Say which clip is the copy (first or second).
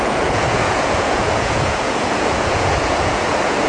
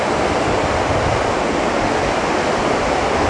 first